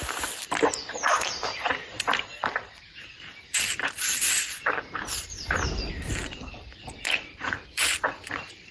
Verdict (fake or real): fake